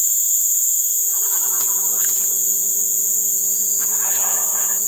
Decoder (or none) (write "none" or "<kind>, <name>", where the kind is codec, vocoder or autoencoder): vocoder, Vocos